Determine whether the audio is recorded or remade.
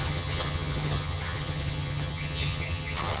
remade